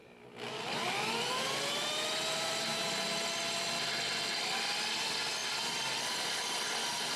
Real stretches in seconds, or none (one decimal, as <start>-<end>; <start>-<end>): 0.0-5.4